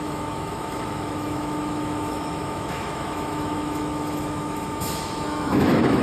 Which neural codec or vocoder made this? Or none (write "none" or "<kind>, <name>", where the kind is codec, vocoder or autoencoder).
autoencoder, DAC-VAE